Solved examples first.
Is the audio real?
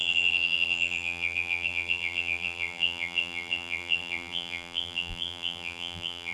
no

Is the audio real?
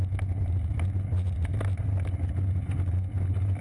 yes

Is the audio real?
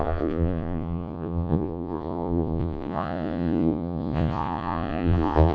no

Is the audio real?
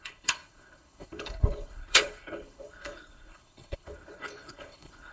no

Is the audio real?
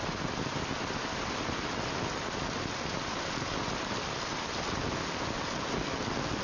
yes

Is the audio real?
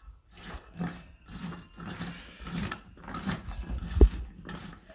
yes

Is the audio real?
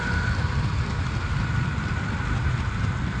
yes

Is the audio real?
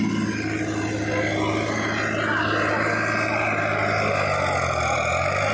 yes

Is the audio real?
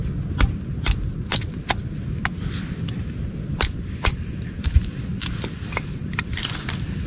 no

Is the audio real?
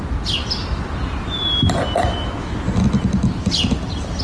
yes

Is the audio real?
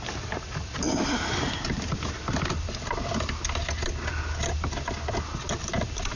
yes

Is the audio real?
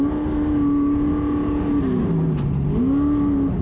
yes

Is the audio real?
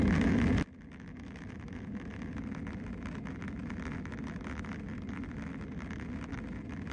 yes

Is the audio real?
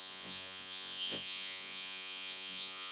no